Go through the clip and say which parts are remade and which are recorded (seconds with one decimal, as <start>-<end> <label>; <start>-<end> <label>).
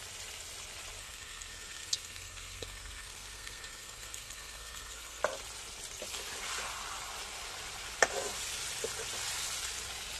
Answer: 0.0-1.0 recorded; 1.0-5.2 remade; 5.2-10.2 recorded